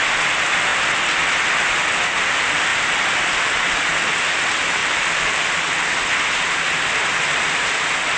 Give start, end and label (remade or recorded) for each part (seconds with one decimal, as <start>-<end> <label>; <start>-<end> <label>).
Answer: 0.0-2.7 recorded; 2.7-3.8 remade; 3.8-4.8 recorded; 4.8-5.6 remade; 5.6-8.2 recorded

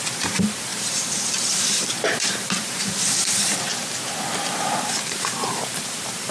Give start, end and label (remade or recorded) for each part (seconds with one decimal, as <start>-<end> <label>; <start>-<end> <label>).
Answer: 0.0-3.7 remade; 3.7-4.6 recorded; 4.6-6.3 remade